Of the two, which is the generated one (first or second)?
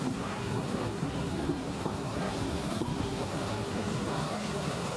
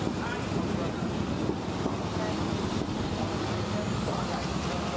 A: first